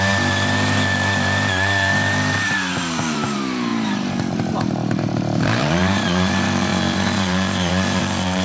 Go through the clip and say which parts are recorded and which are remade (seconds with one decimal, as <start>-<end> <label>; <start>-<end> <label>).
0.0-8.4 remade